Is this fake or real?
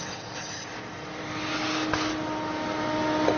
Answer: real